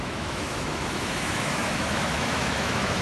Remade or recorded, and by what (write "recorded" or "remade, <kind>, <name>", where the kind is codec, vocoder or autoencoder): remade, autoencoder, DAC-VAE